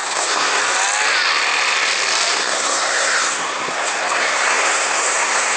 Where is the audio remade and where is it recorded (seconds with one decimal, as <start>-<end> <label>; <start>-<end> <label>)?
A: 0.0-0.6 remade; 0.6-2.3 recorded; 2.3-5.6 remade